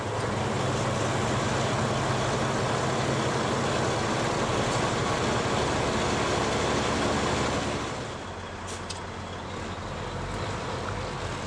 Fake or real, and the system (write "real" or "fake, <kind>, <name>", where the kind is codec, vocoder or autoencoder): real